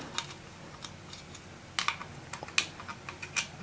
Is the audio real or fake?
real